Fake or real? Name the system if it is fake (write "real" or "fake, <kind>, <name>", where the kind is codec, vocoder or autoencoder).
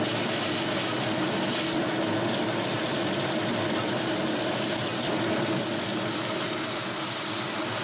real